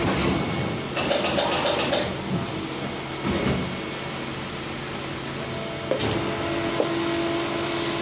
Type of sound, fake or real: real